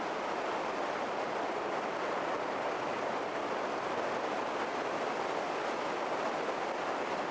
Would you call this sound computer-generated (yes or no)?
no